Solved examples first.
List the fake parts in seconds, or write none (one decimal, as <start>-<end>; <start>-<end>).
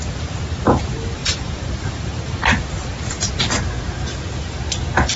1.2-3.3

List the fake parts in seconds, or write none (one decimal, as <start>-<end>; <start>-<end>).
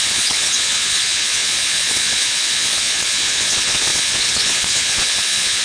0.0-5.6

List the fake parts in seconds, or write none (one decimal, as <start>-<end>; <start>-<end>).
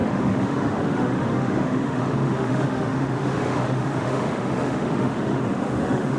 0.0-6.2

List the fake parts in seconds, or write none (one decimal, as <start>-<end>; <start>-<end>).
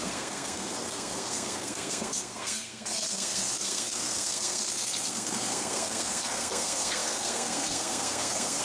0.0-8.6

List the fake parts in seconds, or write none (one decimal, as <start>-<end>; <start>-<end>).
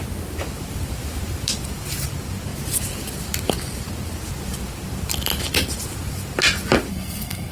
6.9-7.5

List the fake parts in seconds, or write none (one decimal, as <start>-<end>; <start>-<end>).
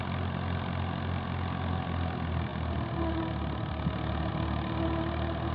none